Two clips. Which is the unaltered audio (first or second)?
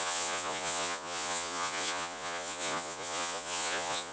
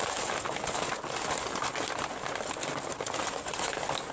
second